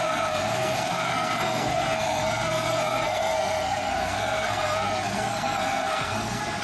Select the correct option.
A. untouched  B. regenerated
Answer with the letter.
B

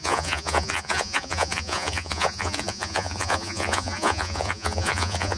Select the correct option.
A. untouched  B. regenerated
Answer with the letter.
B